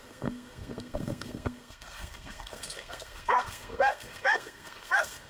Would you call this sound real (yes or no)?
no